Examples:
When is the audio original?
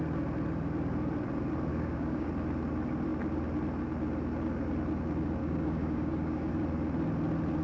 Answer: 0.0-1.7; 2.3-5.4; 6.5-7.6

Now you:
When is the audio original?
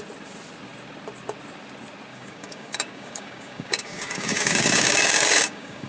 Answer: 0.0-2.1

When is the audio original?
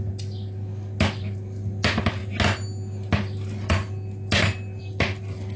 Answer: 0.0-5.6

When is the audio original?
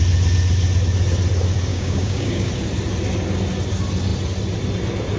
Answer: 0.0-1.7; 2.5-5.2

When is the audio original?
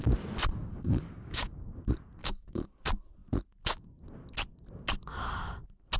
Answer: 0.0-0.6; 1.7-2.2; 2.8-6.0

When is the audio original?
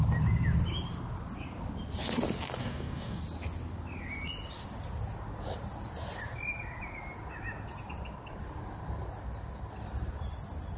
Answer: 0.0-2.6; 3.2-10.8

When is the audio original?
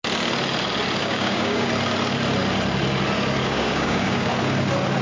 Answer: 0.0-1.0; 1.7-3.4; 4.3-5.0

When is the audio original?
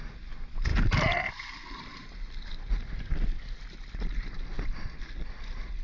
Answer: 0.0-5.8